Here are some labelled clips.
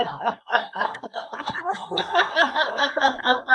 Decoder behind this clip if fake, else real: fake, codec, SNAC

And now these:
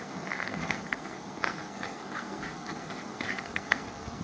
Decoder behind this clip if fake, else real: fake, codec, SNAC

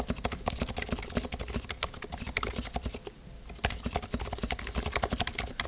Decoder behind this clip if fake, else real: real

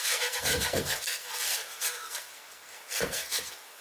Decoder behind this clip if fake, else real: fake, codec, SNAC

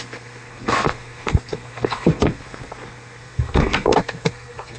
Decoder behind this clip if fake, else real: fake, codec, SNAC